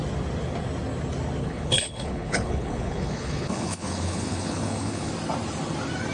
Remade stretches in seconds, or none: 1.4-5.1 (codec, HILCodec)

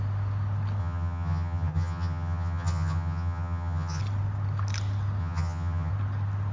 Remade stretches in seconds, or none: 0.8-4.0 (vocoder, HiFi-GAN); 5.2-5.9

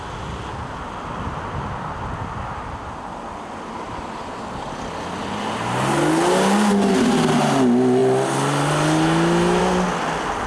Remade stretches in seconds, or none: none

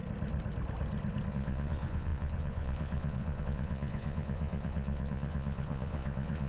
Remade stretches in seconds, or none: 1.3-6.5 (vocoder, Vocos)

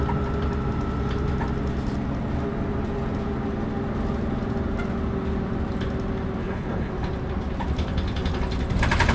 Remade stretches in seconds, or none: 6.4-6.9 (codec, HILCodec)

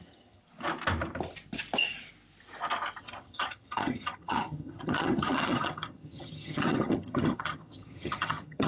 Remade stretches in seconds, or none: 0.0-0.4 (vocoder, HiFi-GAN); 3.0-8.7

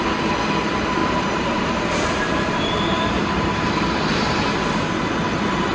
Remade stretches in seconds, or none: 1.0-4.4 (vocoder, BigVGAN v2)

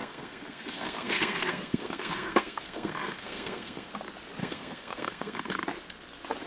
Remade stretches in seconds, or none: 0.0-3.9 (codec, SNAC); 4.4-5.6